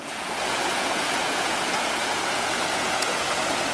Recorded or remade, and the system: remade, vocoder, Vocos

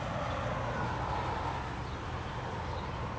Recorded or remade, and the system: recorded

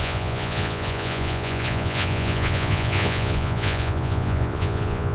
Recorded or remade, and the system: remade, vocoder, Vocos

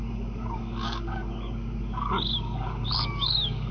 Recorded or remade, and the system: remade, codec, DAC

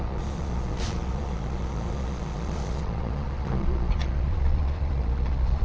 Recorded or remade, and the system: remade, vocoder, Vocos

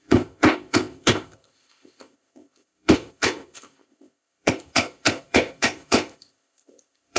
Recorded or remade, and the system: remade, codec, ZipCodec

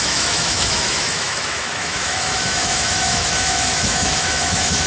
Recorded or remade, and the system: remade, autoencoder, DAC-VAE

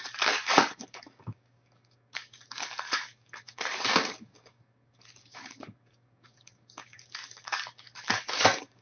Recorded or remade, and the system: remade, codec, DAC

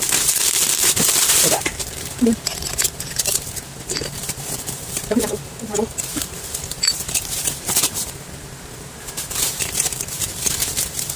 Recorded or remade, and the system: remade, vocoder, BigVGAN v2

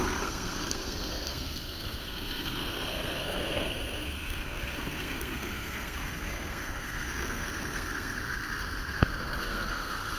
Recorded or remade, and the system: remade, codec, SNAC